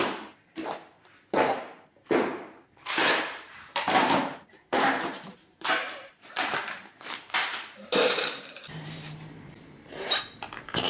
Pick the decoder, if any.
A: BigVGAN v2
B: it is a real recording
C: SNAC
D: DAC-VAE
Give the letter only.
A